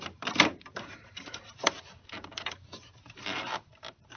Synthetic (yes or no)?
yes